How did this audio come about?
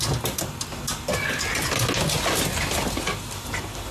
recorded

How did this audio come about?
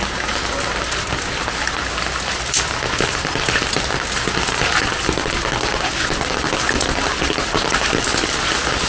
recorded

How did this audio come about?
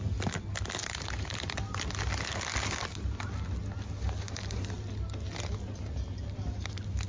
recorded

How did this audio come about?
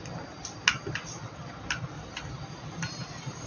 recorded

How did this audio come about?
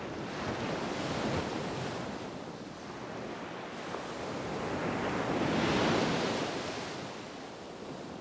recorded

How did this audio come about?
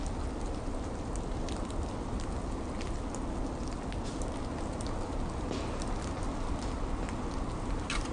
recorded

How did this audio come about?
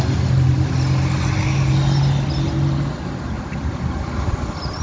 recorded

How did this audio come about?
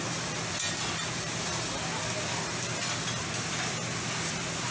recorded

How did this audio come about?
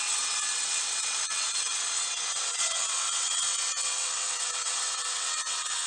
remade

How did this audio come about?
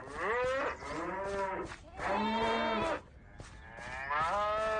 recorded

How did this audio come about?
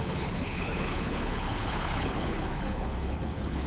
remade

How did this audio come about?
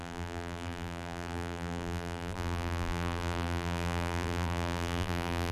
remade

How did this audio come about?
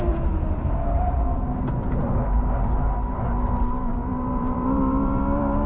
remade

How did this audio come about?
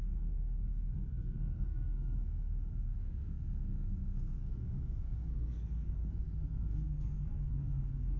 remade